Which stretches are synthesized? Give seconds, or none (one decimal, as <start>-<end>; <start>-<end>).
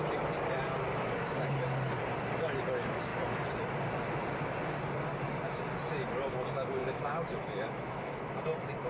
6.8-8.3